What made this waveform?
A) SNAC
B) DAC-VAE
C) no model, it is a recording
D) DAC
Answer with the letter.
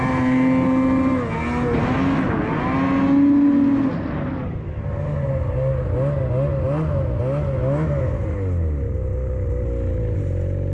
C